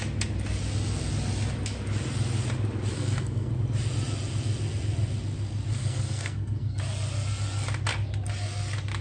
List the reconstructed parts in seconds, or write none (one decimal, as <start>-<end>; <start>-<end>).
2.9-3.5; 5.7-6.8